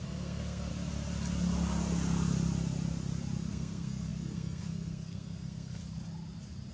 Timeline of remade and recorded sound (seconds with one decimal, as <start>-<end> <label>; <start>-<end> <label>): 0.0-0.7 remade; 0.7-3.5 recorded; 3.5-5.8 remade; 5.8-6.7 recorded